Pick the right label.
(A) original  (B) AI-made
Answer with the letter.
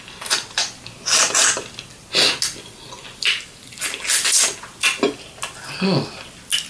A